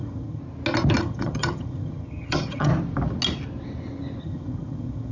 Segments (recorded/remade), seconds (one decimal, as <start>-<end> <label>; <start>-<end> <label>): 0.0-0.4 remade; 0.4-1.0 recorded; 1.0-2.7 remade; 2.7-4.2 recorded; 4.2-5.1 remade